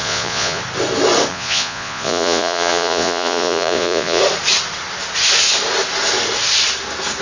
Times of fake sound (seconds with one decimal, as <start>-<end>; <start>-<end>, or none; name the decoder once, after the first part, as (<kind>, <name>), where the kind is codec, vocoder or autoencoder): 0.0-0.6 (vocoder, Vocos); 1.3-4.2